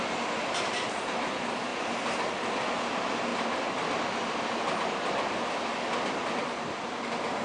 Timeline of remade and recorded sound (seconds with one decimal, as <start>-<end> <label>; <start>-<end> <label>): 0.0-7.4 recorded